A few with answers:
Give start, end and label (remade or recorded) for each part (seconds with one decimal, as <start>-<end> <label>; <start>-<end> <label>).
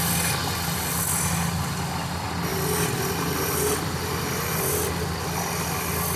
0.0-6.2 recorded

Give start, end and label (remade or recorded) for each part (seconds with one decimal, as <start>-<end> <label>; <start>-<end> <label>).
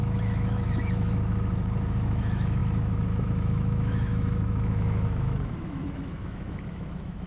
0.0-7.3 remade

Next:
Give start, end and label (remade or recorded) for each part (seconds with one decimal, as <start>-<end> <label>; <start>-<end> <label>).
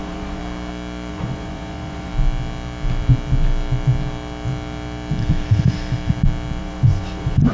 0.0-0.4 remade; 0.4-1.1 recorded; 1.1-2.1 remade; 2.1-6.6 recorded; 6.6-7.5 remade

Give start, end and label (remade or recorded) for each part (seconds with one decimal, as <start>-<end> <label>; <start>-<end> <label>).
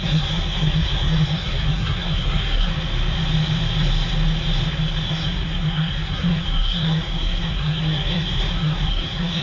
0.0-2.7 remade; 2.7-5.1 recorded; 5.1-9.4 remade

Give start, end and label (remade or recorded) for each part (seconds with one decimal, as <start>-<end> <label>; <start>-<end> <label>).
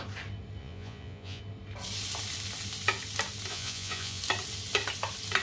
0.0-0.6 recorded; 0.6-1.4 remade; 1.4-3.5 recorded; 3.5-4.2 remade; 4.2-5.4 recorded